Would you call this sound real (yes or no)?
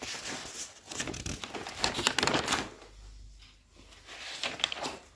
yes